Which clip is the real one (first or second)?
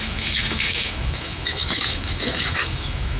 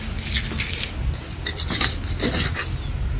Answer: second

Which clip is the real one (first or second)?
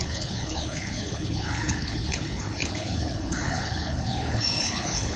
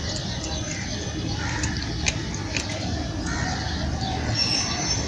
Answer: second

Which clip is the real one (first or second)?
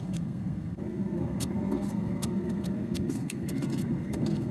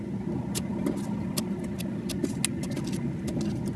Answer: second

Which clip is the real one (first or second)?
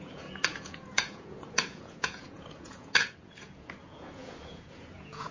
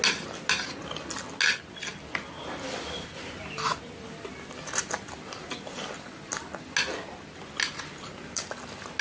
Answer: second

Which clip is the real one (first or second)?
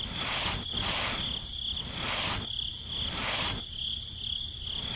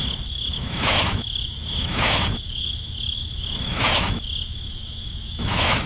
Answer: first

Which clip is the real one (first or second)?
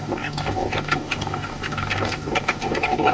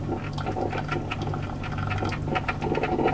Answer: second